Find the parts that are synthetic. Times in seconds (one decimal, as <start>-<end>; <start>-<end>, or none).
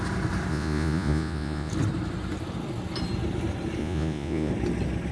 0.5-1.7; 3.8-4.5